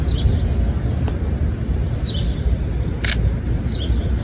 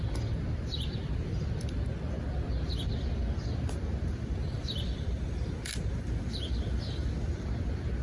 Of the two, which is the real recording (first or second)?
first